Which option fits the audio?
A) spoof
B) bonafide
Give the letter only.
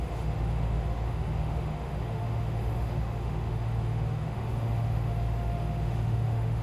A